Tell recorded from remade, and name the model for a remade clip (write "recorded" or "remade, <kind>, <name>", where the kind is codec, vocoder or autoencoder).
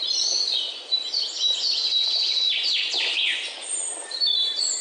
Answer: remade, vocoder, BigVGAN v2